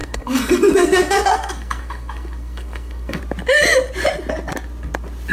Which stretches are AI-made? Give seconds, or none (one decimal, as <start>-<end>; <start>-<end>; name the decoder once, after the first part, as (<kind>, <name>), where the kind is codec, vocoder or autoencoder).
0.0-3.2 (codec, SNAC)